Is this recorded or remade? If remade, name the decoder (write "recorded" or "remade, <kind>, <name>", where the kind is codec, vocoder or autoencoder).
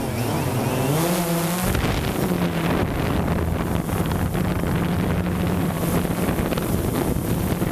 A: recorded